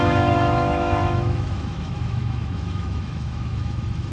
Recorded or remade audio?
remade